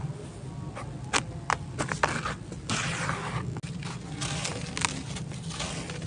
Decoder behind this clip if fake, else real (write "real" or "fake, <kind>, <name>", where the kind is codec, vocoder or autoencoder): real